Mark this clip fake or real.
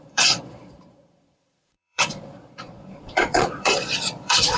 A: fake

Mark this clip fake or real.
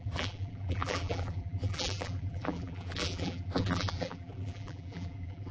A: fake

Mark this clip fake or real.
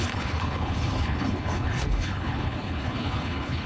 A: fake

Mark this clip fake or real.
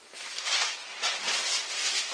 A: real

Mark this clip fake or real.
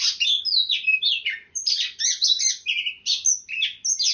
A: real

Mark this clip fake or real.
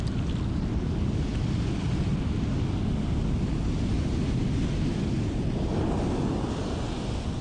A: real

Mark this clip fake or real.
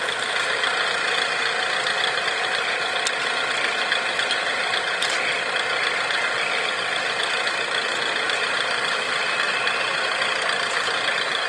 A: real